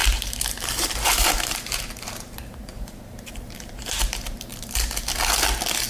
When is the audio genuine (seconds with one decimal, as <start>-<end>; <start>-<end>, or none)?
4.5-5.9